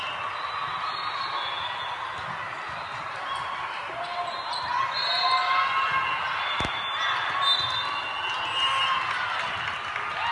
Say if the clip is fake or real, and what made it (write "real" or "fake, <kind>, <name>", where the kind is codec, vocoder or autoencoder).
real